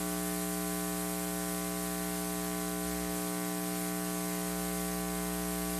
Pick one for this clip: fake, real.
real